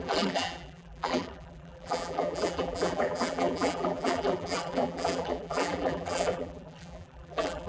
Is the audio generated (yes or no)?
yes